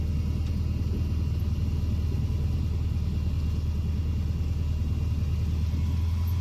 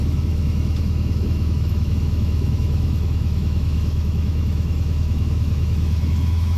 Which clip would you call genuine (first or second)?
first